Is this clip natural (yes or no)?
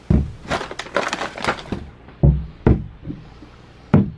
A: yes